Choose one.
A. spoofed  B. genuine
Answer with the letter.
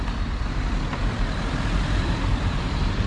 A